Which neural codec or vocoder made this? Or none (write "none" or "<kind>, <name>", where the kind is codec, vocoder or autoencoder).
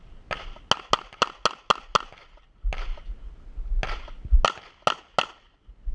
none